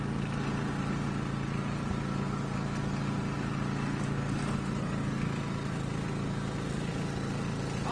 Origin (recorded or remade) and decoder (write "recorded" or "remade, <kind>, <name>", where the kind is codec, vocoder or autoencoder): recorded